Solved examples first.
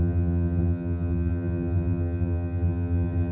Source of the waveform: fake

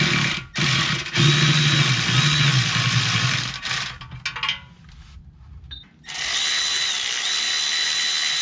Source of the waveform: real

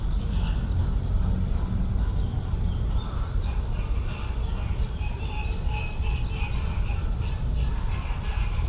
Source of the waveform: real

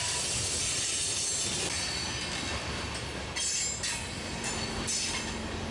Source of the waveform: real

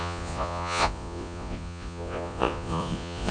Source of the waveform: fake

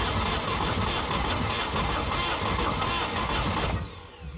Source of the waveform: real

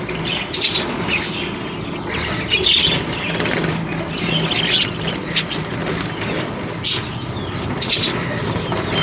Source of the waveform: real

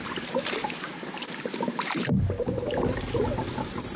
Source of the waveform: real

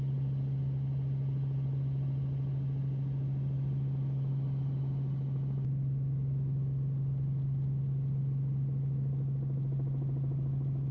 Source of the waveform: real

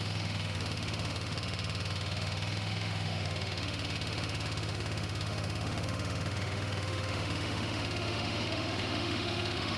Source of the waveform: fake